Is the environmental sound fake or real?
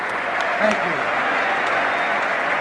fake